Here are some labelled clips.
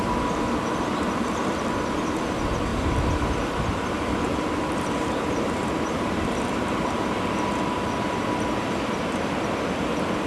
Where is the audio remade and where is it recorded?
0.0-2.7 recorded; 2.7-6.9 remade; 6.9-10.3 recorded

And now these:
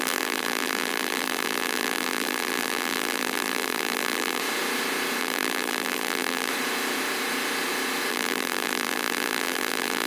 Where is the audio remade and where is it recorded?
0.0-4.4 remade; 4.4-5.2 recorded; 5.2-6.5 remade; 6.5-8.1 recorded; 8.1-10.1 remade

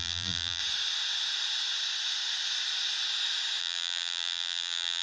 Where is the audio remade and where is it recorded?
0.0-0.6 remade; 0.6-3.6 recorded; 3.6-5.0 remade

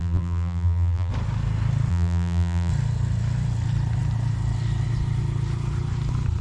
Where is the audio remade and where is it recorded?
0.0-1.1 remade; 1.1-1.9 recorded; 1.9-2.7 remade; 2.7-6.4 recorded

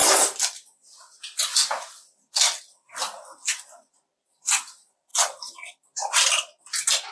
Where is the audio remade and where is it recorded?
0.0-7.1 recorded

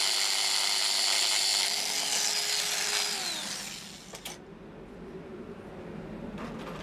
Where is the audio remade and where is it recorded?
0.0-6.8 recorded

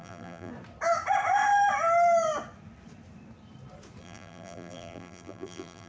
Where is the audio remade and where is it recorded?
0.0-0.5 remade; 0.5-4.0 recorded; 4.0-5.9 remade

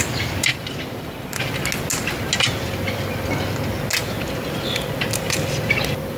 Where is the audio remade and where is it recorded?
0.0-0.5 recorded; 0.5-1.4 remade; 1.4-6.2 recorded